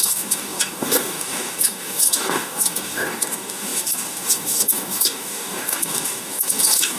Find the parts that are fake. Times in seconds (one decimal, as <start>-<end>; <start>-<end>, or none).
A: 0.0-7.0